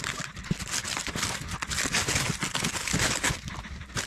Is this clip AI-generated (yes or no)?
no